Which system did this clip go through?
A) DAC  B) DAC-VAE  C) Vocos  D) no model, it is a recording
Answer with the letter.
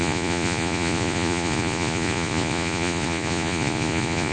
C